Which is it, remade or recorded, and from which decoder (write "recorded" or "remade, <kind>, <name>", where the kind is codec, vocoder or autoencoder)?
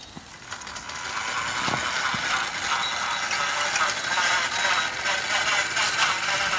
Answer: recorded